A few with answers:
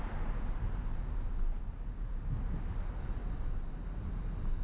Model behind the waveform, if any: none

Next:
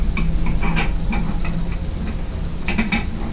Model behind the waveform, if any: none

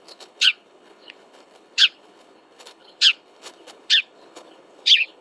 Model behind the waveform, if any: codec, HILCodec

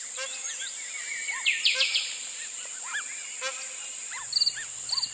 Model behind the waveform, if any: none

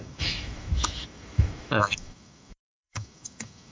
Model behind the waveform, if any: autoencoder, DAC-VAE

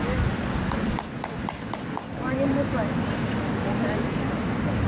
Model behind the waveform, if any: none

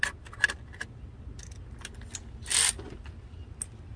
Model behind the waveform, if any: none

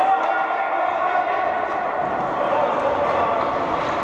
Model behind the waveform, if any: none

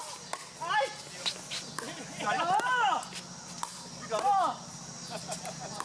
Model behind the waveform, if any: none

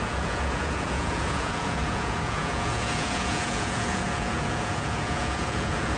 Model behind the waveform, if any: vocoder, Vocos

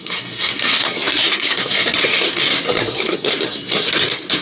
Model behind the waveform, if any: codec, SNAC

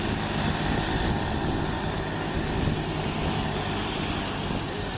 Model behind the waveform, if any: none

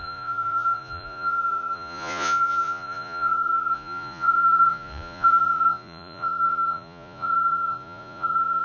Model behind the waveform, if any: vocoder, Vocos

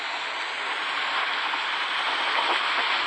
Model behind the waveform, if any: none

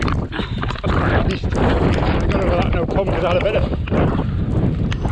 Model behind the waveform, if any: none